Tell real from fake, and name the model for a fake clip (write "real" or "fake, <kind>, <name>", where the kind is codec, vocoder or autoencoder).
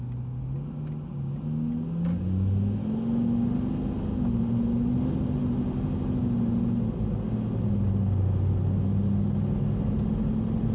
real